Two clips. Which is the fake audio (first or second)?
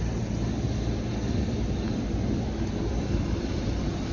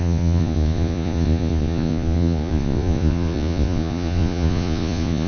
second